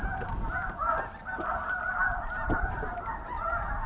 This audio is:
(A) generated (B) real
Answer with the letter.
B